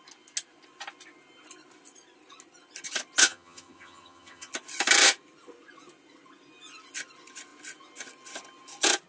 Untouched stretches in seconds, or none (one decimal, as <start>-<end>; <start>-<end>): 0.0-3.2; 4.5-9.1

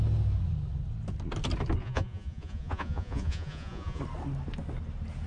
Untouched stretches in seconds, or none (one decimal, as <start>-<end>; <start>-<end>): 0.0-1.8; 4.0-5.3

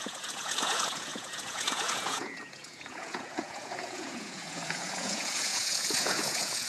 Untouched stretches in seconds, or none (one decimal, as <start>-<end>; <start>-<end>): none

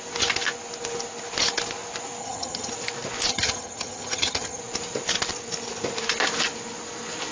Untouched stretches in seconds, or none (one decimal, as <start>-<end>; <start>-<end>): 0.0-2.2; 2.7-3.3; 4.6-7.3

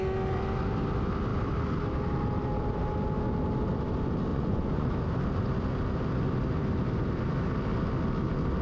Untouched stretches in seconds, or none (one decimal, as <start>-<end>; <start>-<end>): 0.0-4.3; 4.9-8.6

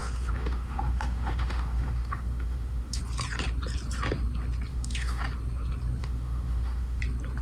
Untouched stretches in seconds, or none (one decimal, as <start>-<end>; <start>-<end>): 3.0-4.7; 5.2-6.0; 7.0-7.4